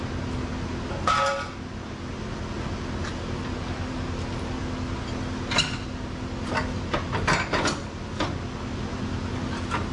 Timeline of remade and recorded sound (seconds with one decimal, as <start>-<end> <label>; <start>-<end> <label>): 0.0-9.9 recorded